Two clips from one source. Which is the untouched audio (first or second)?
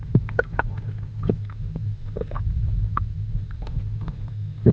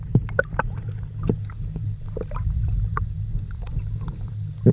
second